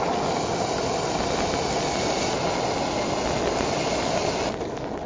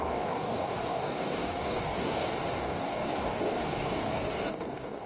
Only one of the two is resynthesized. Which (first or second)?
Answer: second